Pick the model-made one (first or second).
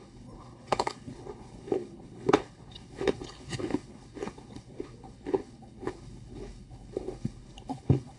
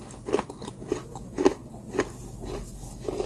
first